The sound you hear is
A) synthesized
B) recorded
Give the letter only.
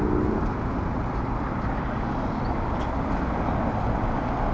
B